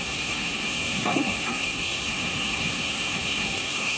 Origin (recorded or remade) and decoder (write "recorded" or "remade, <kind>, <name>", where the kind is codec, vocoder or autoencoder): remade, codec, SNAC